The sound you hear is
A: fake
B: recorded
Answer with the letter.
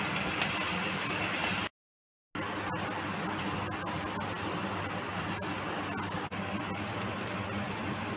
B